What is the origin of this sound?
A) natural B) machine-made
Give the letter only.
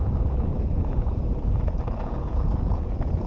B